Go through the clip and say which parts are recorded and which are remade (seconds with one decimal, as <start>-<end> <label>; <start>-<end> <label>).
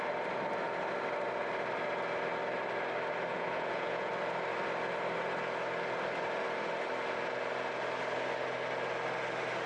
0.0-3.3 recorded; 3.3-4.1 remade; 4.1-9.7 recorded